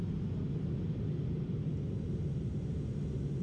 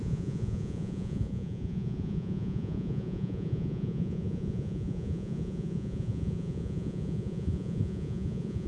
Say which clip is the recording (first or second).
first